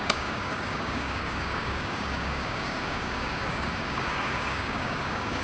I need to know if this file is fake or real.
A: fake